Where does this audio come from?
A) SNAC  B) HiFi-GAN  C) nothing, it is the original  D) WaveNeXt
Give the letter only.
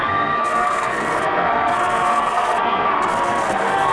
A